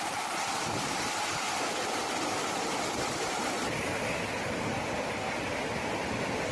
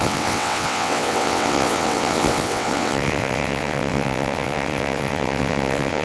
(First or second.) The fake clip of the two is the second